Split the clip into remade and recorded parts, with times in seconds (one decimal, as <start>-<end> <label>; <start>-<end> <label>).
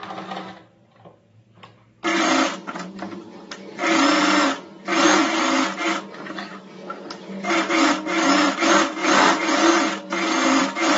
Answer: 0.0-2.1 recorded; 2.1-3.4 remade; 3.4-9.0 recorded; 9.0-10.6 remade; 10.6-11.0 recorded